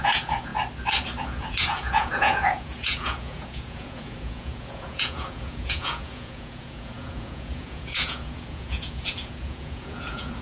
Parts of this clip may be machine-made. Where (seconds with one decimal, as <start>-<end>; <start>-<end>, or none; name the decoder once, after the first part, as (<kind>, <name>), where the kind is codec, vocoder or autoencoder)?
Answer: 0.0-0.5 (vocoder, Vocos); 1.2-10.4